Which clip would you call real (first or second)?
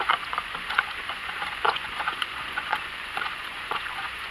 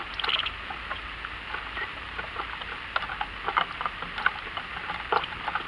second